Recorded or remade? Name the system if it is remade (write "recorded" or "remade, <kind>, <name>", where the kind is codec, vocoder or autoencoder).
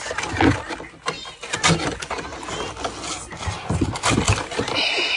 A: recorded